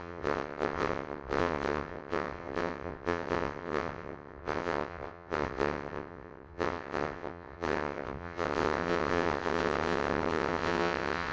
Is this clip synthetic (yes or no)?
yes